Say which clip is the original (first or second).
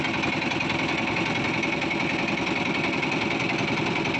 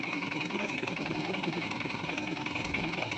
first